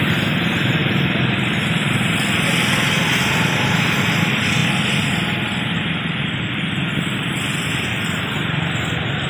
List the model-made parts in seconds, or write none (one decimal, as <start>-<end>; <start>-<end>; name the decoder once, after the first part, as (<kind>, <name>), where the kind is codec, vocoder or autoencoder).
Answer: 0.8-1.3 (vocoder, BigVGAN v2)